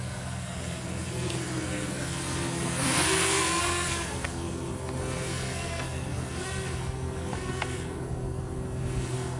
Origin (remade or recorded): remade